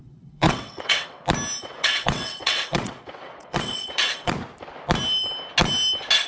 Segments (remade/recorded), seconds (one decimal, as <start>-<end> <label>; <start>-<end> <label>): 0.0-1.2 remade; 1.2-1.6 recorded; 1.6-4.3 remade; 4.3-6.3 recorded